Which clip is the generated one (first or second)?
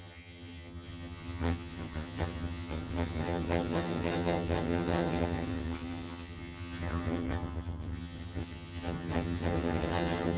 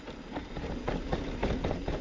first